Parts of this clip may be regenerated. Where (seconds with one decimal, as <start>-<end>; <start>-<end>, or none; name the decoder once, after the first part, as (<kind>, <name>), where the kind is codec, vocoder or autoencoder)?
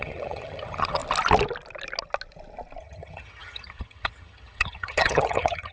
0.0-1.0 (vocoder, HiFi-GAN); 2.8-5.7